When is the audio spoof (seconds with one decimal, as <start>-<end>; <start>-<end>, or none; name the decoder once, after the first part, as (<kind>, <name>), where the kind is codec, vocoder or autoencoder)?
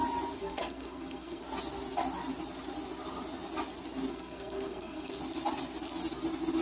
0.4-1.4 (codec, SNAC); 4.1-5.2